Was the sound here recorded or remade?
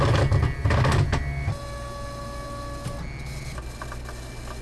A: recorded